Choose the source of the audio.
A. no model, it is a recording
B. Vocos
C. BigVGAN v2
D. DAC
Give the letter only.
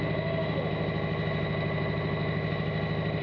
A